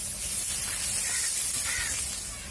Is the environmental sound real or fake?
real